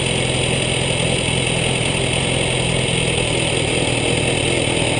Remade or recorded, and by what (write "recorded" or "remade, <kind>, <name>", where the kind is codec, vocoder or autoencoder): recorded